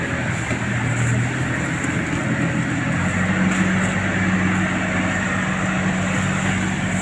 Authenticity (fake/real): real